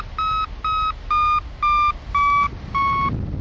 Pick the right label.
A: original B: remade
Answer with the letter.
A